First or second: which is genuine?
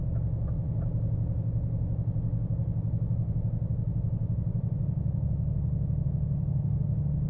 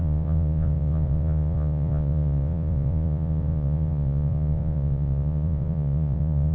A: first